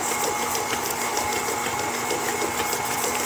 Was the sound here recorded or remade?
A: remade